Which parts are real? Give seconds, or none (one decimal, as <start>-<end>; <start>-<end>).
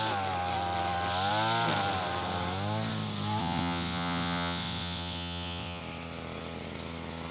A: 0.0-3.4; 5.8-7.3